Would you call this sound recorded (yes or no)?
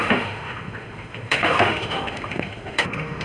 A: no